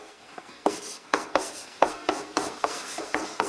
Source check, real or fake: fake